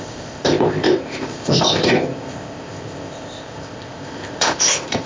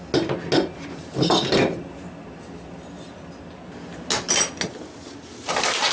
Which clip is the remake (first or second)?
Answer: first